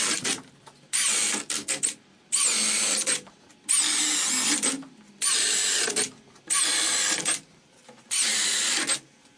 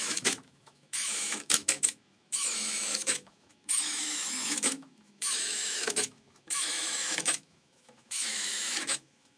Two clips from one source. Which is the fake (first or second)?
second